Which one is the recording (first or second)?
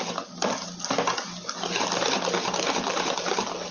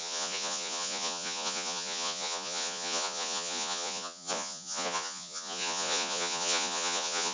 first